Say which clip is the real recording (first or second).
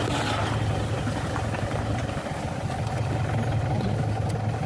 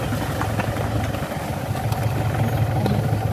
second